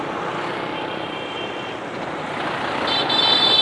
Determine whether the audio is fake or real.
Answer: real